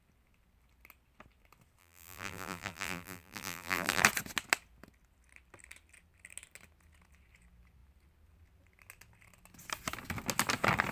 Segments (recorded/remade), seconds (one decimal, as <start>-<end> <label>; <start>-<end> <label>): 0.0-1.8 recorded; 1.8-4.0 remade; 4.0-10.9 recorded